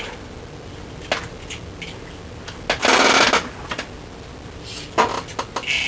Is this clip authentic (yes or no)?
yes